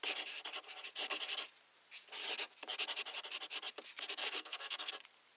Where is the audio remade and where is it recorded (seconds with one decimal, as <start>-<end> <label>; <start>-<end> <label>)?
0.0-4.2 recorded; 4.2-4.9 remade; 4.9-5.4 recorded